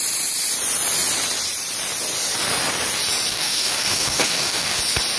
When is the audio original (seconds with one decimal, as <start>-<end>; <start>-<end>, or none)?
0.0-3.3; 4.8-5.2

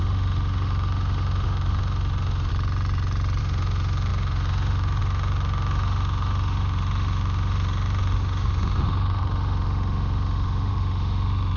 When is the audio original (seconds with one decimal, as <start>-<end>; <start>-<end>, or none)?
2.5-3.4

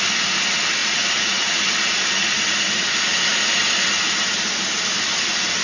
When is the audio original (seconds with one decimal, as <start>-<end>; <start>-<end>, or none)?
0.0-0.8; 1.6-5.6

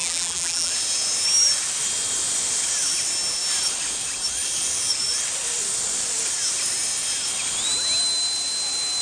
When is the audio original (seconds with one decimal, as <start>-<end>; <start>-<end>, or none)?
0.7-9.0

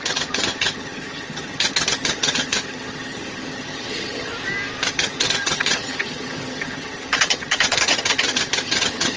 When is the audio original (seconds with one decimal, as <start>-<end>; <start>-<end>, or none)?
4.3-4.9

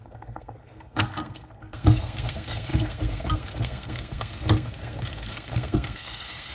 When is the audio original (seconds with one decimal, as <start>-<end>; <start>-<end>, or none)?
none

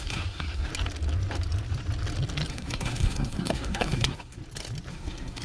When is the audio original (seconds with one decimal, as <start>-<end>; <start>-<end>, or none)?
0.7-2.5; 4.4-4.9

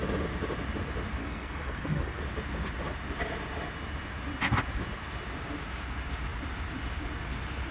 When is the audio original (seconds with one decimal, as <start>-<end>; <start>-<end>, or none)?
0.0-1.2; 2.2-7.7